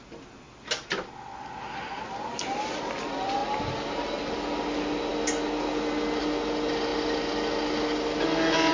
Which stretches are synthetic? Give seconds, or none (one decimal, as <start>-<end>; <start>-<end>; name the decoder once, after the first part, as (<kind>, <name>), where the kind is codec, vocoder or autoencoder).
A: none